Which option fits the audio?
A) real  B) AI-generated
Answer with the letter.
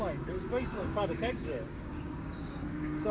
B